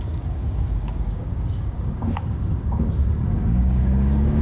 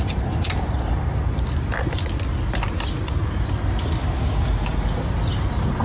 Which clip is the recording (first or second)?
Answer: second